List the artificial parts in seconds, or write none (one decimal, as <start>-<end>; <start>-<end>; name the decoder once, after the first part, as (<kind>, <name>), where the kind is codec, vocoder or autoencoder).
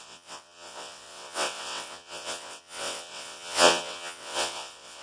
0.0-5.0 (vocoder, WaveNeXt)